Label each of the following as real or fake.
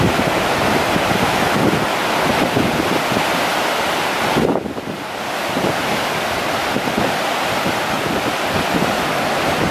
real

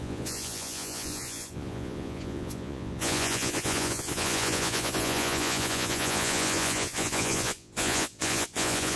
fake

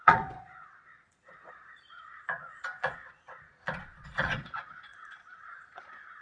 fake